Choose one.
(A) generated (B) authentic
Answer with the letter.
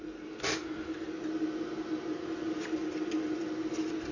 B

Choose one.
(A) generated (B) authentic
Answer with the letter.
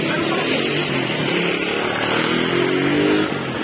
B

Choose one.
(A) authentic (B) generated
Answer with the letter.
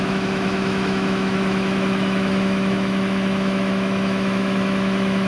B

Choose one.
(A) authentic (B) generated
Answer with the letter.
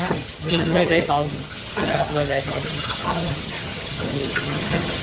B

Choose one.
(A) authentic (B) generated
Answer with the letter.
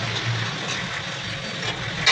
A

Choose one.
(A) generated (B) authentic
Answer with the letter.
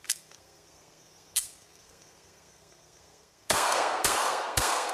A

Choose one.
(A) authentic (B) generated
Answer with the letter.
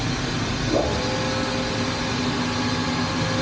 A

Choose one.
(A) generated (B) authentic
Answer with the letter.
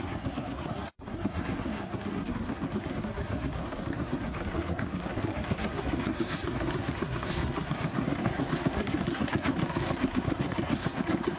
A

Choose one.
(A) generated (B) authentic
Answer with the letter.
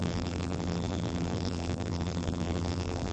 A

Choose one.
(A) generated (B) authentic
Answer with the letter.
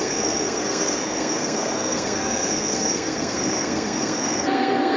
A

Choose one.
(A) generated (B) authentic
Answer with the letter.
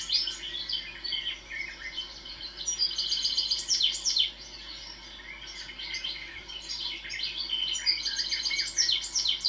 B